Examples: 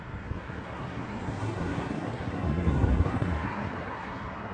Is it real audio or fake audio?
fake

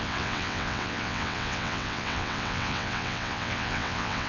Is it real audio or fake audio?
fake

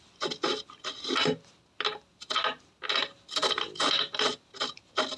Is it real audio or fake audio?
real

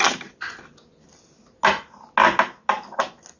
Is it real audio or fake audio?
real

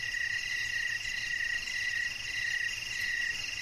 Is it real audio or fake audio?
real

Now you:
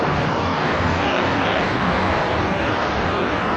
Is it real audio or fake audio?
fake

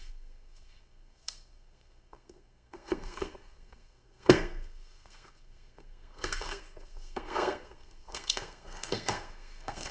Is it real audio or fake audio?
fake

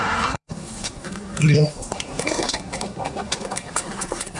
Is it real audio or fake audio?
fake